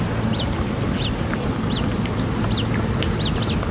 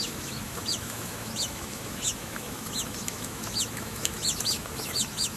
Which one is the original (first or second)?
first